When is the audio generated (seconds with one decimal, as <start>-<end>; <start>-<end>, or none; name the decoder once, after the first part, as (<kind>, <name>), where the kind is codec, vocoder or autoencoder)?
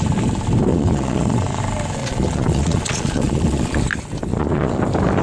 0.7-1.6 (vocoder, Vocos); 2.0-3.8; 4.3-4.8